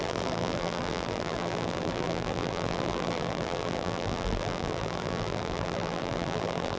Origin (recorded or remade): remade